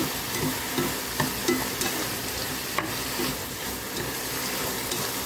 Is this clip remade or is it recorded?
recorded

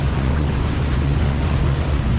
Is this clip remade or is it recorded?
remade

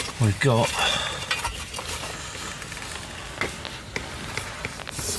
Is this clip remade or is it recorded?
recorded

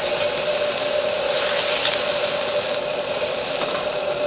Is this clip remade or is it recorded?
recorded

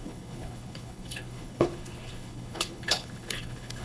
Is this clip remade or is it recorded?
remade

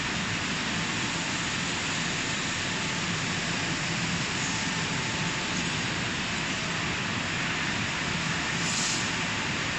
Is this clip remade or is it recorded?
recorded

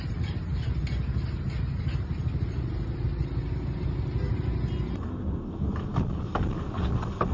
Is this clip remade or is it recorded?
recorded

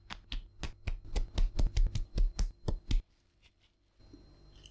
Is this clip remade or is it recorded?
recorded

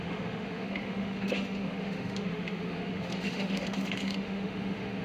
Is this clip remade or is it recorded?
remade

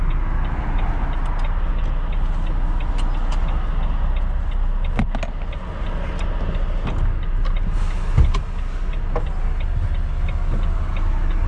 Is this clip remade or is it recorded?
recorded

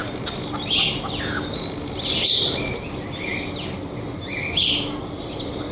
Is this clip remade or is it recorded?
recorded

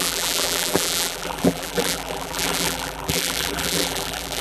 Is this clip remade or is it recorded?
remade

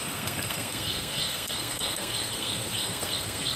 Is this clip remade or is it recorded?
remade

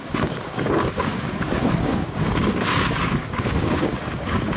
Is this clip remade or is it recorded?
remade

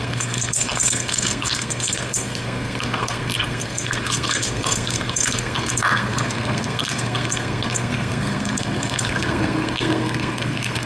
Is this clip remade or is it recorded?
remade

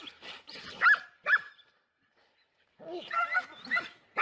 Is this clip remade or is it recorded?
recorded